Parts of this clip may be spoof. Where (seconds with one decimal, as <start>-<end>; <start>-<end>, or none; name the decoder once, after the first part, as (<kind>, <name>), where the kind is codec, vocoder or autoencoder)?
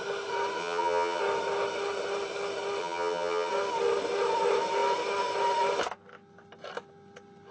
0.6-1.2 (vocoder, HiFi-GAN); 2.8-3.5